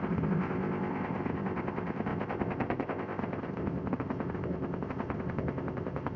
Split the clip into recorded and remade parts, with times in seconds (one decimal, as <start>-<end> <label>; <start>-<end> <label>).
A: 0.0-6.2 remade